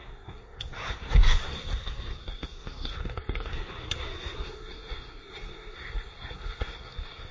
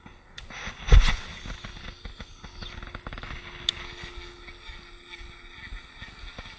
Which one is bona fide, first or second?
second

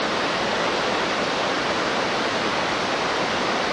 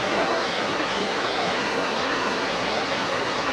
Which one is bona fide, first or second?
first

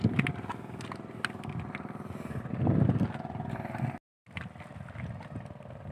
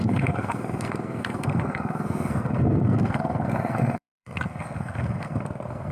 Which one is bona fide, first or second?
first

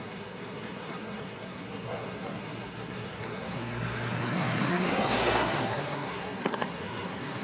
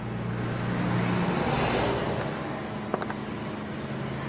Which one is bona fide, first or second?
second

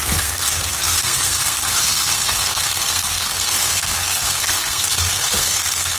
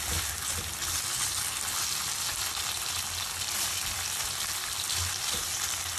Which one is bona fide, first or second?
second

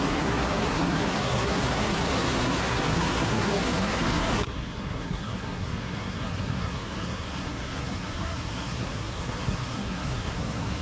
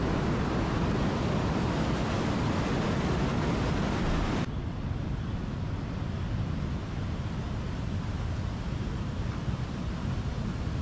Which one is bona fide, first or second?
second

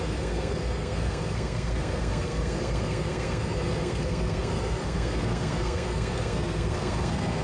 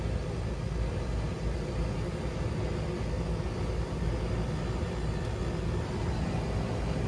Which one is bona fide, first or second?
second